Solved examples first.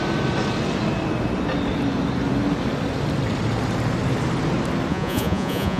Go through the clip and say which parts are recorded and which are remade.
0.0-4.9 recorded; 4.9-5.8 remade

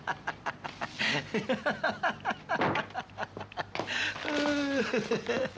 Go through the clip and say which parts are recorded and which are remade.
0.0-5.6 recorded